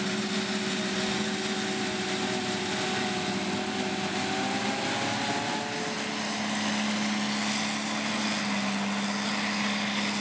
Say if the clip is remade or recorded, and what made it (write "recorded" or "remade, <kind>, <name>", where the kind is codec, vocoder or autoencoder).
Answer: recorded